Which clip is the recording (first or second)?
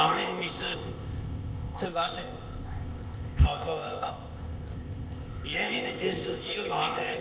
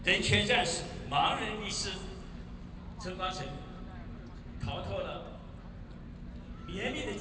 second